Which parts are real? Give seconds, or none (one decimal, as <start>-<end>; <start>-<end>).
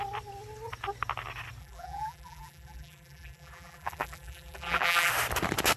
0.0-1.6; 5.1-5.8